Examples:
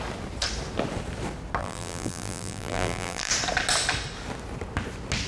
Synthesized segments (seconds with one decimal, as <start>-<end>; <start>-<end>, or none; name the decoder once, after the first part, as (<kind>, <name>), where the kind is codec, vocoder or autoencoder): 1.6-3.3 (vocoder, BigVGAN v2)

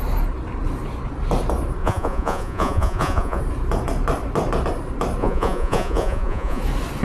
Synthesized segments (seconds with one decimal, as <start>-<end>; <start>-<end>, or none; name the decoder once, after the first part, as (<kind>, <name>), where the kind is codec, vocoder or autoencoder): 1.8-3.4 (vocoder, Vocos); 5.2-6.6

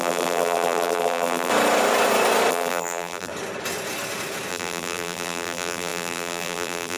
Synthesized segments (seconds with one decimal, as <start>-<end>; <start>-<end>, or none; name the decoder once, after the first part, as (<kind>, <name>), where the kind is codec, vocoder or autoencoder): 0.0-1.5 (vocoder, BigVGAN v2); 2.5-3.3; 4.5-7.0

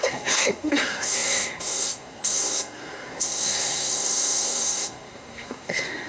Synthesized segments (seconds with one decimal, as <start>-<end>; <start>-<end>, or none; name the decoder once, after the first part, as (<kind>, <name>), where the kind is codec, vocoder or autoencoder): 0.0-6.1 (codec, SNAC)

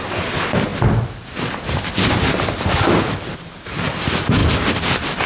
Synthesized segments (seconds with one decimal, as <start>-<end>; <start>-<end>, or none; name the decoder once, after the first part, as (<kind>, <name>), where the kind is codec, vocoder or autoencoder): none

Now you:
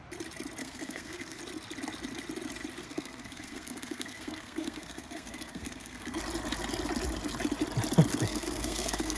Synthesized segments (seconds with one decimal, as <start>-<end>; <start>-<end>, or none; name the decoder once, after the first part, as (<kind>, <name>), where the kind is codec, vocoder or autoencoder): 0.6-1.4 (codec, SNAC); 2.8-6.2; 8.1-9.2

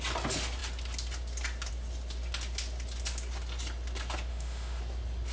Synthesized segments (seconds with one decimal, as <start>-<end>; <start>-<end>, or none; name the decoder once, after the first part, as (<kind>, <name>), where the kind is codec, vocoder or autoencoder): 4.3-4.8 (autoencoder, DAC-VAE)